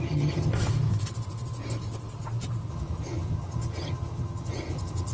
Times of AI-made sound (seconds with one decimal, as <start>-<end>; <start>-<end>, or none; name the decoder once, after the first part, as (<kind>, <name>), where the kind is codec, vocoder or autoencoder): 0.0-0.5 (vocoder, HiFi-GAN); 2.7-5.1